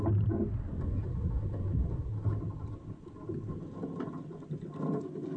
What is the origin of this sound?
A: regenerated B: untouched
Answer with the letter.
B